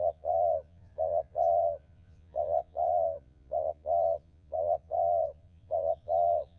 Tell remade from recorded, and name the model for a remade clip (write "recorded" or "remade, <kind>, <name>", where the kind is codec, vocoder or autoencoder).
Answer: remade, vocoder, Vocos